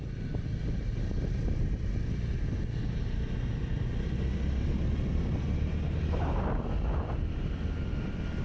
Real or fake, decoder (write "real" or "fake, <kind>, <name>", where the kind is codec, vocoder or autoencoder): real